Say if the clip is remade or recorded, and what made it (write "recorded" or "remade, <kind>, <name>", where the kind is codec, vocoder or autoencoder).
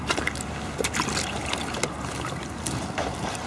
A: recorded